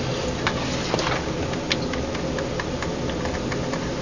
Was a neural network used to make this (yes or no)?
no